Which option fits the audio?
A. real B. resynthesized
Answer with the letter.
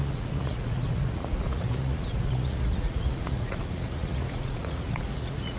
B